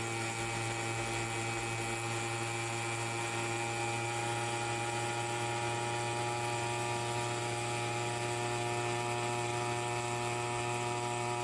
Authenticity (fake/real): real